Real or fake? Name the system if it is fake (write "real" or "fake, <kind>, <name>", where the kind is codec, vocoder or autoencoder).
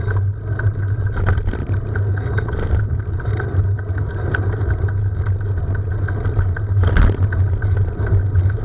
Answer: real